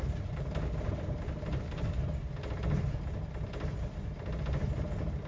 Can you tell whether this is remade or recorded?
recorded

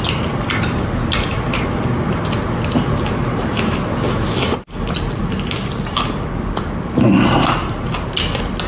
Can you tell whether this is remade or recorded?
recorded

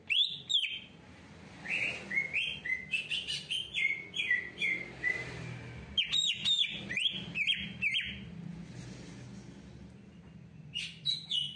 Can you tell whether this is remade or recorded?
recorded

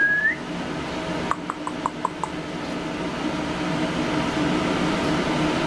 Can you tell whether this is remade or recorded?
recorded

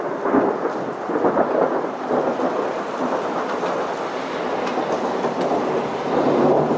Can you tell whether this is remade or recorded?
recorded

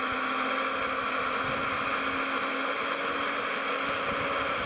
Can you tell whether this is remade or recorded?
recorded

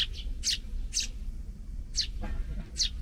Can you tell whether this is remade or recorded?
recorded